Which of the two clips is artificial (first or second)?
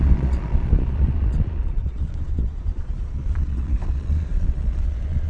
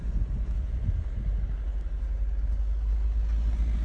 first